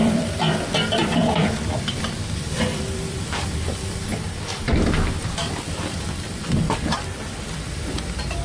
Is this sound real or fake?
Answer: fake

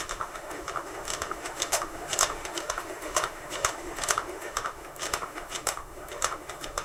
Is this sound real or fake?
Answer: fake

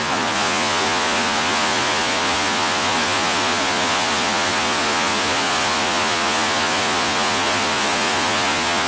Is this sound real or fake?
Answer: fake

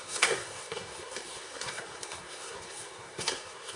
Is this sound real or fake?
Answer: fake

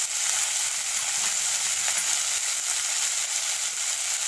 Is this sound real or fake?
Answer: real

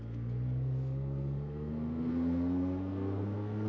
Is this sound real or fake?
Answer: fake